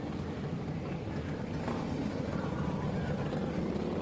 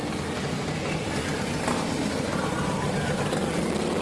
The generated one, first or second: first